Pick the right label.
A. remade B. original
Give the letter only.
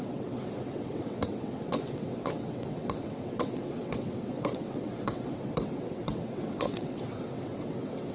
A